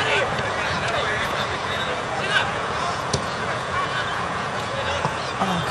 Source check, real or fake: fake